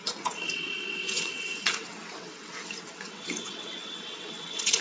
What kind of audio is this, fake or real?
fake